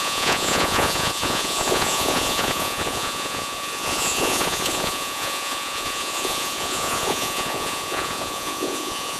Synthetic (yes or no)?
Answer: yes